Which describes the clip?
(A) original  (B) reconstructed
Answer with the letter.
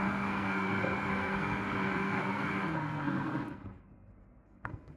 B